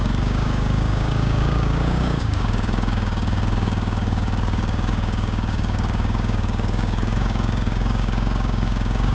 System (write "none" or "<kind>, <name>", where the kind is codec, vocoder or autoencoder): codec, DAC